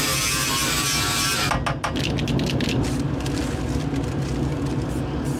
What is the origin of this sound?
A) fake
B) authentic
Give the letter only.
B